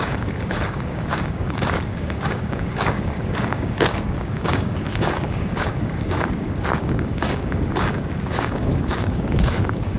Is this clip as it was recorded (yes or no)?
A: no